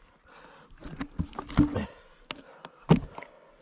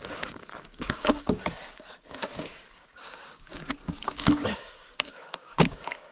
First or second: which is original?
first